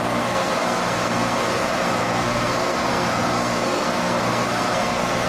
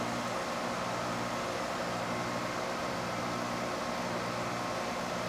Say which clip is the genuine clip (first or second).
second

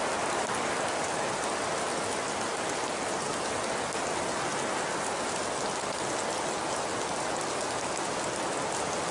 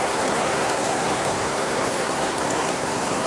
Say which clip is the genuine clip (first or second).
first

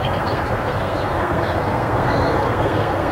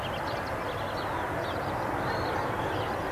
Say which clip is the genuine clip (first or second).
second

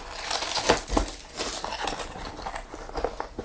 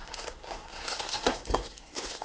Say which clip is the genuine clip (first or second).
first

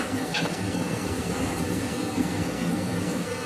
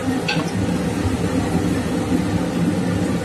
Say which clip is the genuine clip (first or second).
second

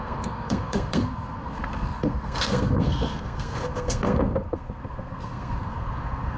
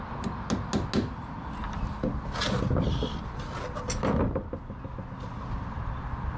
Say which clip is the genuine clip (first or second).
second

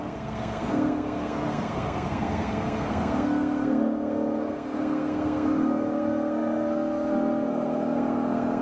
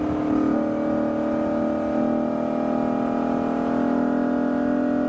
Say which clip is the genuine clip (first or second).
second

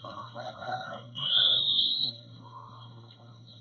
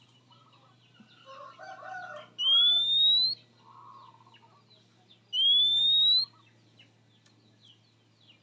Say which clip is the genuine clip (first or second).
second